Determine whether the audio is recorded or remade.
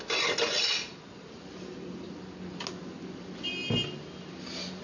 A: recorded